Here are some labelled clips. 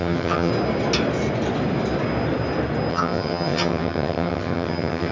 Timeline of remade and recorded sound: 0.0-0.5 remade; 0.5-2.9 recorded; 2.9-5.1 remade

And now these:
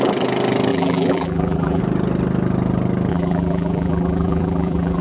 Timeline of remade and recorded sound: 0.0-0.7 recorded; 0.7-1.8 remade; 1.8-3.1 recorded; 3.1-5.0 remade

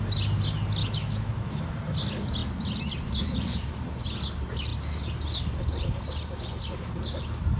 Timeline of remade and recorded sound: 0.0-0.8 recorded; 0.8-1.6 remade; 1.6-7.6 recorded

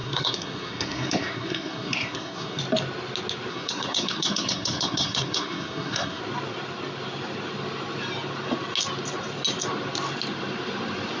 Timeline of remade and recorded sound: 0.0-2.6 remade; 2.6-3.5 recorded; 3.5-6.2 remade; 6.2-11.2 recorded

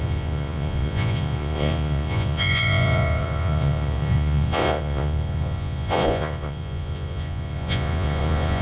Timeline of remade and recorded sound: 0.0-8.6 remade

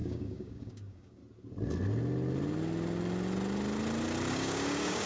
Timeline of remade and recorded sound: 0.0-1.2 remade; 1.2-4.3 recorded; 4.3-5.1 remade

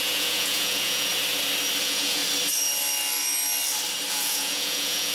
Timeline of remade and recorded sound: 0.0-1.1 remade; 1.1-1.8 recorded; 1.8-2.2 remade; 2.2-4.1 recorded; 4.1-5.1 remade

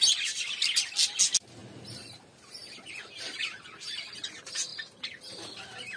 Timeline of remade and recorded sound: 0.0-6.0 recorded